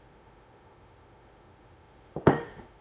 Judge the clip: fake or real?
fake